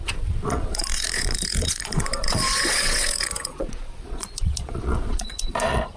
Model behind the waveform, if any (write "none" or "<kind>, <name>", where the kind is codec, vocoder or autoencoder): vocoder, Vocos